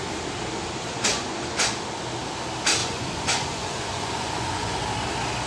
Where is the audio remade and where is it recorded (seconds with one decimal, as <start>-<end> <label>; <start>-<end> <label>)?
0.0-1.1 recorded; 1.1-1.7 remade; 1.7-2.8 recorded; 2.8-4.8 remade; 4.8-5.5 recorded